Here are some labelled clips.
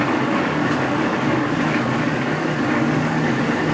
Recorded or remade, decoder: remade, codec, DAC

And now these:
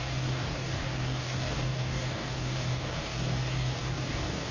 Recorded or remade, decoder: remade, codec, DAC